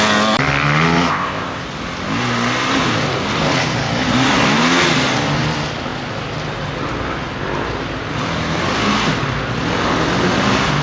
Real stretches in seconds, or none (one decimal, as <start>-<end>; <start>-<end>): 0.0-1.1; 1.6-10.8